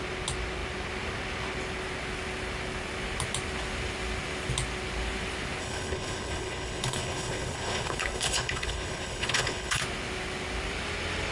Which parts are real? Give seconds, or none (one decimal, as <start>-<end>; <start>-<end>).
0.0-5.6; 9.8-11.3